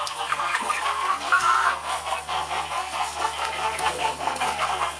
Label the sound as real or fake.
fake